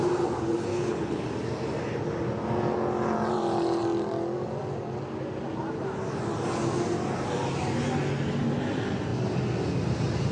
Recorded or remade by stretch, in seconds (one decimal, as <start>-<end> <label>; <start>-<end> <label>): 0.0-0.7 recorded; 0.7-1.3 remade; 1.3-10.3 recorded